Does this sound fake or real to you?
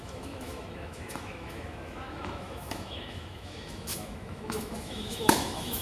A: fake